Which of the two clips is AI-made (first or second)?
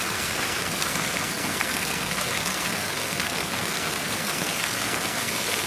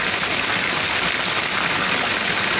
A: first